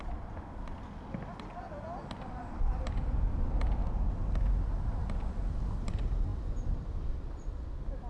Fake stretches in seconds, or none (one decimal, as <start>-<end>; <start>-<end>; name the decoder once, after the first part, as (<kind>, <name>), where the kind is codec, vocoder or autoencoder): none